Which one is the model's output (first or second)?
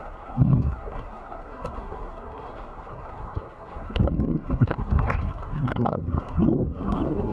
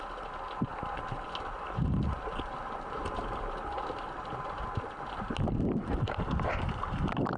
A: first